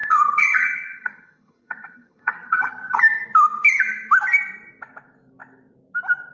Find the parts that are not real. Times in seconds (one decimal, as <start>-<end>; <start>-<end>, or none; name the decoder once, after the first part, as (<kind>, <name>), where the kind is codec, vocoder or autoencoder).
0.0-3.0 (vocoder, HiFi-GAN)